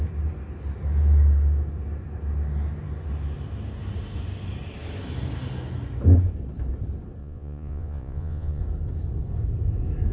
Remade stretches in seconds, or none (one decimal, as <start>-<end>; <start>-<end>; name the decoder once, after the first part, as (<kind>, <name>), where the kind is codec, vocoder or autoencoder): 7.2-8.6 (vocoder, Vocos)